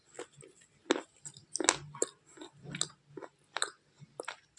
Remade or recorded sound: recorded